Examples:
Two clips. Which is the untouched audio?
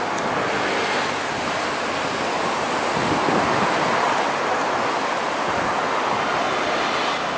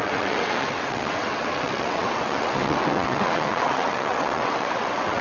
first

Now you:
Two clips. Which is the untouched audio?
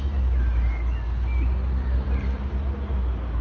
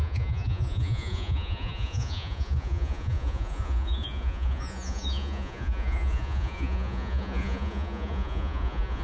first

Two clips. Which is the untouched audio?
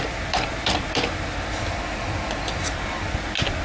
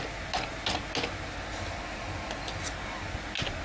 second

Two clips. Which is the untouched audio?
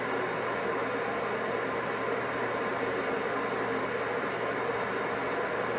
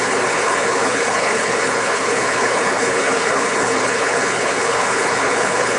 first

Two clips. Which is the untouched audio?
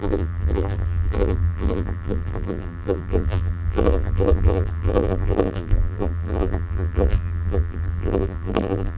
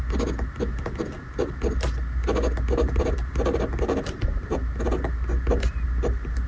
second